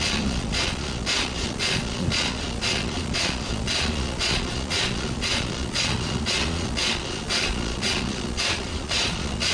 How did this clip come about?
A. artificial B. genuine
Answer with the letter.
A